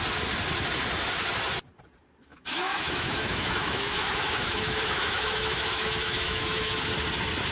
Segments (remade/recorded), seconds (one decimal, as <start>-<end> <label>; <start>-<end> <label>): 0.0-2.3 recorded; 2.3-6.8 remade; 6.8-7.5 recorded